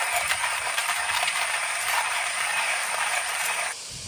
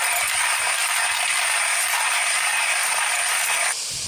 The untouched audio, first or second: second